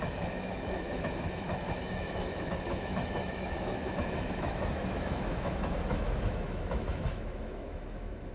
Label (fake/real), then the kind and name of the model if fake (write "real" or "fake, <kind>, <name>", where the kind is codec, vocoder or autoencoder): fake, autoencoder, DAC-VAE